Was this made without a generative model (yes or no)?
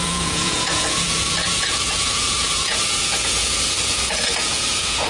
no